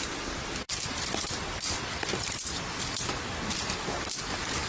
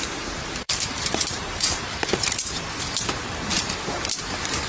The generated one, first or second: second